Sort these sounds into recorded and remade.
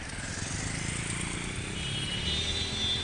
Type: recorded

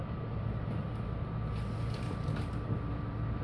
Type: recorded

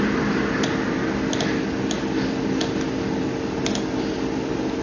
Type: recorded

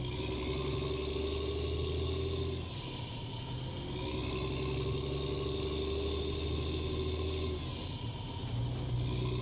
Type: recorded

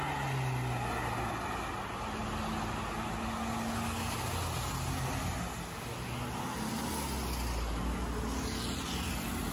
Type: recorded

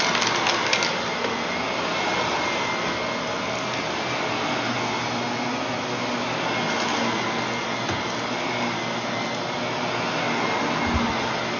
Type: recorded